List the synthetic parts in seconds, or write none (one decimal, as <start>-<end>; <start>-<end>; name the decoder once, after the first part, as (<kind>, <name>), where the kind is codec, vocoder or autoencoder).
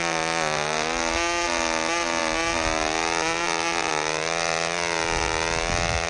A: none